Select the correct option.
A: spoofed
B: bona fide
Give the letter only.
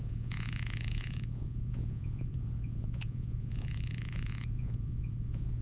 A